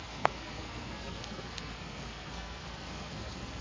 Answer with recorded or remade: remade